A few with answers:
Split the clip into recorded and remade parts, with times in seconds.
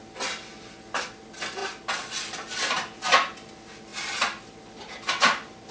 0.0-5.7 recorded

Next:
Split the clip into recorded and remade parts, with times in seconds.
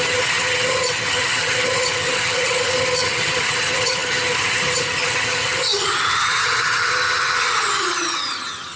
0.0-8.8 remade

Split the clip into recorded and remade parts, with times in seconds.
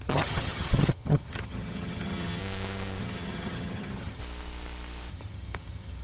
0.0-2.4 remade; 2.4-3.0 recorded; 3.0-4.2 remade; 4.2-5.1 recorded; 5.1-6.0 remade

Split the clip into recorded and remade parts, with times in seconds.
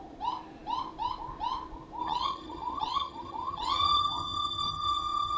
0.0-2.0 recorded; 2.0-5.4 remade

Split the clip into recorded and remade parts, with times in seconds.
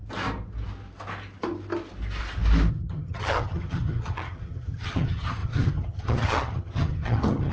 0.0-2.7 recorded; 2.7-7.5 remade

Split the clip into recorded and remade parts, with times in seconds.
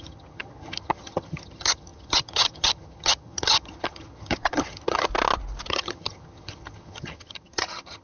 0.0-5.1 remade; 5.1-5.7 recorded; 5.7-8.0 remade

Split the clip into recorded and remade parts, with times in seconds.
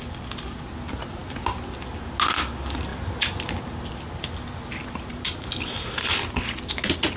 0.0-7.2 recorded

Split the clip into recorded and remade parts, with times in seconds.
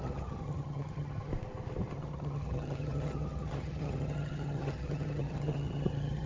0.0-1.3 remade; 1.3-1.9 recorded; 1.9-6.3 remade